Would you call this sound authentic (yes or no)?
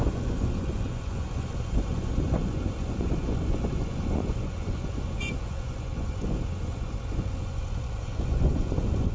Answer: no